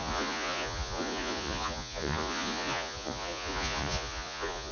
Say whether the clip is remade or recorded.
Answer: remade